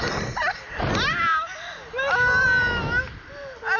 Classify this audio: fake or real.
real